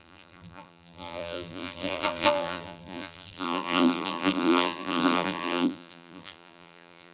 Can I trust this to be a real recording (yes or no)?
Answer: no